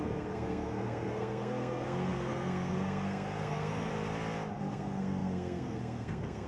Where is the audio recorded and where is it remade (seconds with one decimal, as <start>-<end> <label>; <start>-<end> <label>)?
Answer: 0.0-3.9 remade; 3.9-4.6 recorded; 4.6-6.5 remade